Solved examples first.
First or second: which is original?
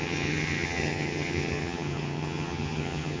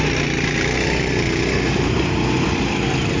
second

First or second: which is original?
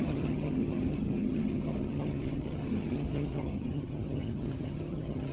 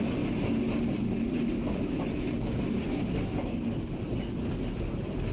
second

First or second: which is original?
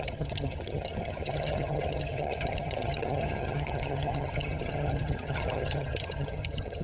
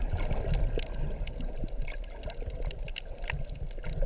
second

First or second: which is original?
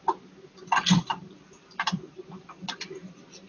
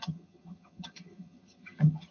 first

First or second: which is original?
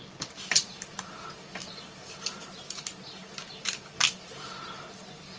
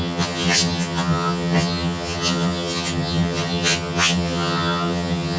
first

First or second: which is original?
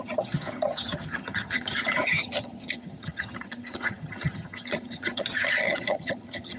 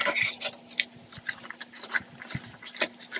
second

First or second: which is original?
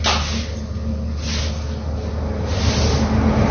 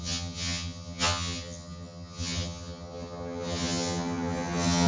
first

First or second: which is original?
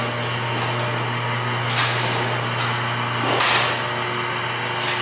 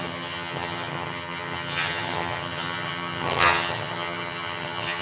first